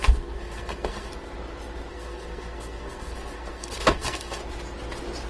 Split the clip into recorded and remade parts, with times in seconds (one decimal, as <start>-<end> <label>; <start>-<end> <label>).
0.0-1.1 remade; 1.1-1.9 recorded; 1.9-4.4 remade; 4.4-5.3 recorded